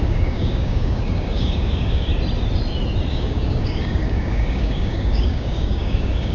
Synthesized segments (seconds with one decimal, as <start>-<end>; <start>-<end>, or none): 0.0-2.1; 3.1-6.3